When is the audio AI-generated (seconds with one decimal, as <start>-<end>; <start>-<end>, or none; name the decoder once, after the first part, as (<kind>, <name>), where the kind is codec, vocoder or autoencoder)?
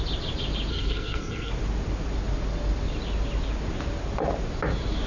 0.7-1.5 (codec, SNAC)